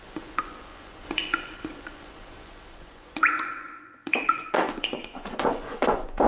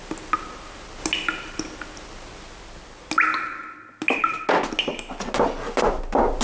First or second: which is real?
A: second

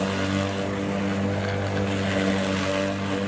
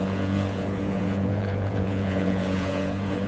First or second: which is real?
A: first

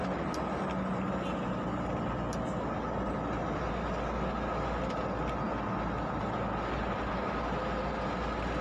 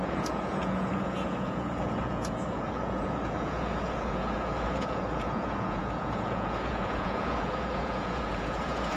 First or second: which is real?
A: first